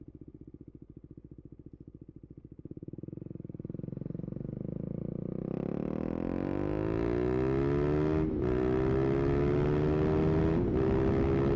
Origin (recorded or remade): recorded